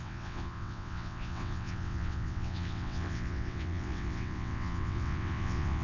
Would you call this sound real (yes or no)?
no